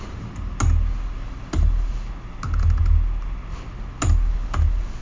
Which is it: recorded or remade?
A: recorded